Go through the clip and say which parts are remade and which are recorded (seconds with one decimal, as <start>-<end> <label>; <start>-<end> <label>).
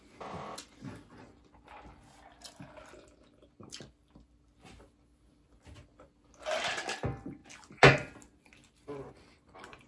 0.0-9.9 recorded